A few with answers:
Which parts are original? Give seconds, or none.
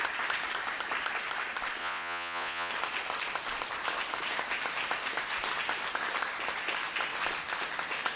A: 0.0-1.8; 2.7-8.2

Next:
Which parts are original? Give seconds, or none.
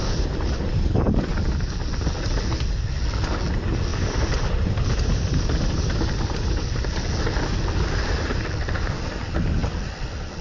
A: 1.0-3.9; 6.9-10.4